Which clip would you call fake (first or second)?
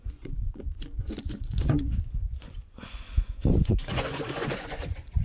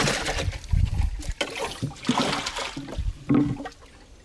first